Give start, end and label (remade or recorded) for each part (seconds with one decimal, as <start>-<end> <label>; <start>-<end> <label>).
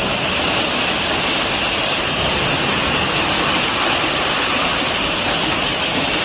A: 0.0-4.7 recorded; 4.7-5.4 remade; 5.4-6.2 recorded